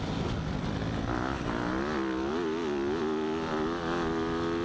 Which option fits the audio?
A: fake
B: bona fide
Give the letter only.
B